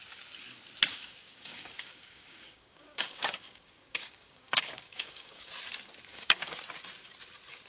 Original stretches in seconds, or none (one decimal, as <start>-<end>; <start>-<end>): 0.0-0.9; 5.5-6.1; 6.6-7.7

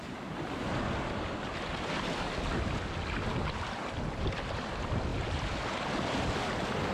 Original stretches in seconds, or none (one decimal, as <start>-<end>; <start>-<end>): 0.0-6.9

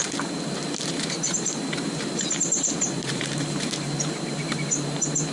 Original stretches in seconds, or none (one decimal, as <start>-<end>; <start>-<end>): none

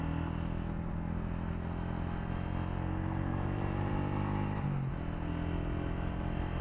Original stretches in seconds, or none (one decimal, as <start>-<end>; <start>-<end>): 0.0-3.3; 3.9-6.6

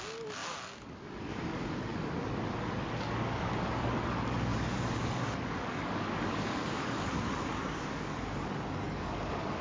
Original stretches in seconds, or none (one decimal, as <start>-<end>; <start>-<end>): none

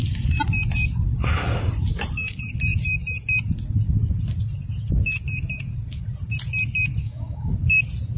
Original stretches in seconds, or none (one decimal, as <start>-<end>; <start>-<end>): 0.0-7.0; 7.5-8.2

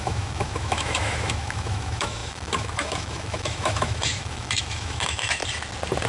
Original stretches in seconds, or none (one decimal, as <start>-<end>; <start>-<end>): 5.4-6.1